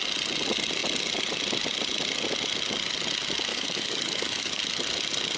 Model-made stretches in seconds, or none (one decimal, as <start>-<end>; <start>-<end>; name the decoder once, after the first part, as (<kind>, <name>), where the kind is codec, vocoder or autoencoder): 3.5-4.6 (codec, DAC)